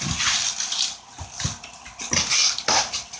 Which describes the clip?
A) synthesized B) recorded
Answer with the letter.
B